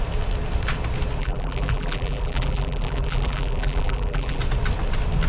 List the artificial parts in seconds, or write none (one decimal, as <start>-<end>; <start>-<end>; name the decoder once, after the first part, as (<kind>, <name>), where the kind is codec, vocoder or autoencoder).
1.2-4.4 (vocoder, BigVGAN v2)

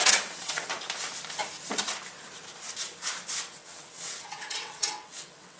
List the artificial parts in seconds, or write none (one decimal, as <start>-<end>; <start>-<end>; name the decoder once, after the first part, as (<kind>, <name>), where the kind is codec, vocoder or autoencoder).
0.0-0.7 (vocoder, WaveNeXt); 3.6-5.6

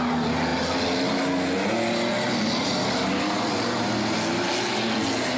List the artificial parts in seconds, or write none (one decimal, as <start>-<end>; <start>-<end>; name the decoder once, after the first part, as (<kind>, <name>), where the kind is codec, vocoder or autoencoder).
none

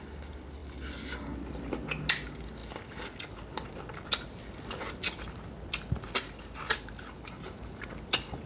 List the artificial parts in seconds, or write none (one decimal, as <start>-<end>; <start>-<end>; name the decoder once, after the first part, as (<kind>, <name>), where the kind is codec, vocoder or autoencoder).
none

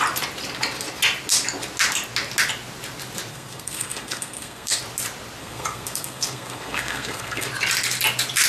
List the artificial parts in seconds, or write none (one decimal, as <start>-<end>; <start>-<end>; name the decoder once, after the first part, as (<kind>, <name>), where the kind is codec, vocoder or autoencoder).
3.3-4.8 (codec, SNAC); 5.4-7.5

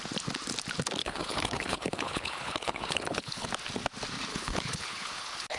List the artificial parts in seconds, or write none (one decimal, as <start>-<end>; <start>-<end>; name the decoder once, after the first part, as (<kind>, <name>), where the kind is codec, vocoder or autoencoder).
1.0-3.5 (codec, HILCodec); 4.3-5.6